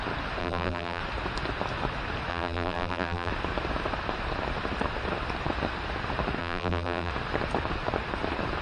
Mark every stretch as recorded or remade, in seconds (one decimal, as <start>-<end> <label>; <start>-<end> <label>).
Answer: 0.0-0.4 recorded; 0.4-1.0 remade; 1.0-2.3 recorded; 2.3-3.3 remade; 3.3-6.4 recorded; 6.4-7.1 remade; 7.1-8.6 recorded